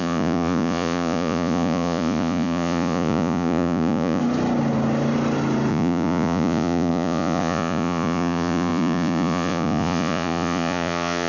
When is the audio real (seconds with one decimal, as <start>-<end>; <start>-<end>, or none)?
4.2-5.7